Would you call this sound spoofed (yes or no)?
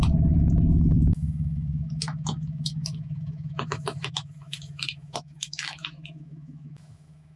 yes